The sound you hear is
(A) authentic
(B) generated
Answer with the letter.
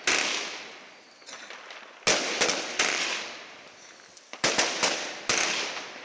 A